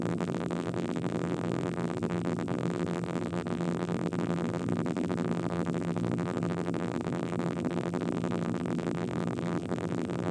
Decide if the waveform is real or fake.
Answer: fake